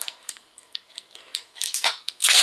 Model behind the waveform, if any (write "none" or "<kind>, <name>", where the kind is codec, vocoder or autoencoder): codec, SNAC